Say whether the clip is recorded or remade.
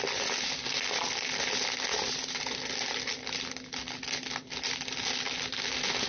recorded